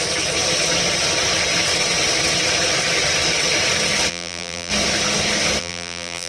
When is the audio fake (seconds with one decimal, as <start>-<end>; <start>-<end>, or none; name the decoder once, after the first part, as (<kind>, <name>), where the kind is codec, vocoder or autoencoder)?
4.1-4.7 (vocoder, BigVGAN v2); 5.6-6.3